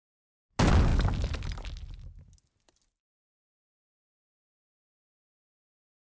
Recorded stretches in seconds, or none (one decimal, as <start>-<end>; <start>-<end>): 0.0-6.0